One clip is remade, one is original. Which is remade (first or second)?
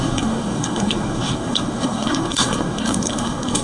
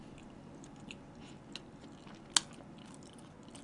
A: first